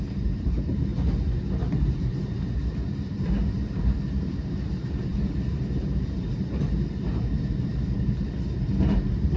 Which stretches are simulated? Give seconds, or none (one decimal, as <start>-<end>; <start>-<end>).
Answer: 0.0-0.9; 1.7-9.4